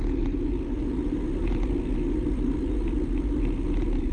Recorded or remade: recorded